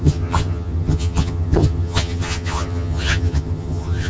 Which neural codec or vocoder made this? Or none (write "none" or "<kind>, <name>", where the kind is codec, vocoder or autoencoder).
vocoder, HiFi-GAN